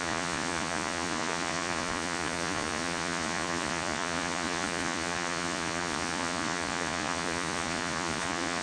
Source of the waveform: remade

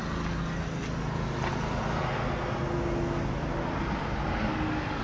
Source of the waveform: recorded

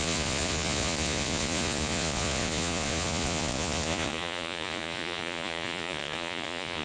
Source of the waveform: remade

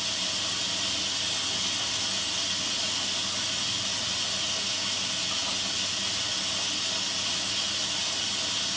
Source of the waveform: recorded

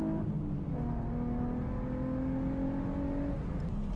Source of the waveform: recorded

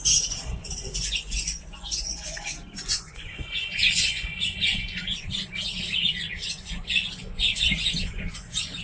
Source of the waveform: remade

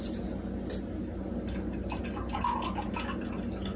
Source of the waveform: recorded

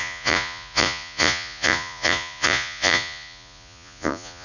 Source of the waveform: remade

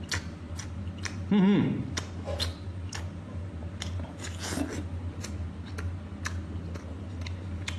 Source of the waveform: recorded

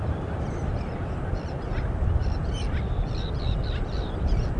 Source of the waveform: recorded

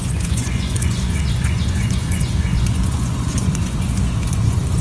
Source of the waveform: remade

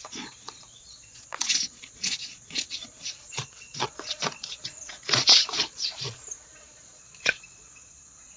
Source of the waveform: remade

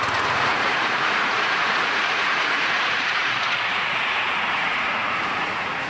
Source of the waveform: remade